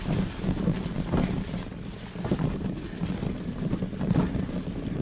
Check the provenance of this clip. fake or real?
real